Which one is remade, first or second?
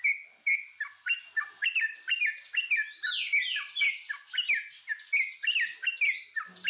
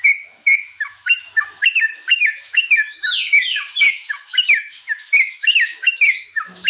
second